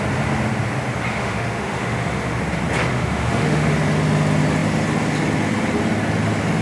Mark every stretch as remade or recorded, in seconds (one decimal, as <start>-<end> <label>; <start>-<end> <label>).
0.0-1.1 recorded; 1.1-2.4 remade; 2.4-2.9 recorded; 2.9-3.7 remade; 3.7-6.6 recorded